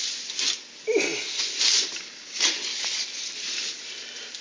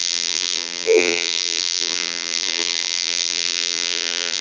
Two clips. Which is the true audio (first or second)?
first